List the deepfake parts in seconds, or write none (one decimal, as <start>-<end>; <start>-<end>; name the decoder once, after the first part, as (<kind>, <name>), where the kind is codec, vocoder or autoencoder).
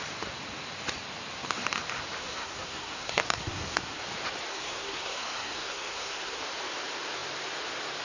2.2-4.0 (codec, SNAC); 4.5-6.4